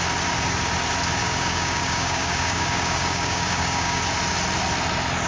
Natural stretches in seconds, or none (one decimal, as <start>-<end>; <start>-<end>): 0.0-1.2; 4.0-5.3